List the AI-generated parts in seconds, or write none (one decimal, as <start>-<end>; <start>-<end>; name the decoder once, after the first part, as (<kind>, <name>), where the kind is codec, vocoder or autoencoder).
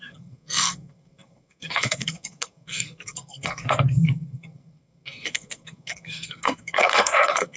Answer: 0.0-7.6 (codec, SNAC)